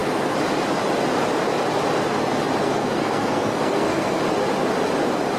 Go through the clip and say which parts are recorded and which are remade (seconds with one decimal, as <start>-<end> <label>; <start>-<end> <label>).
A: 0.0-2.6 recorded; 2.6-4.2 remade; 4.2-5.4 recorded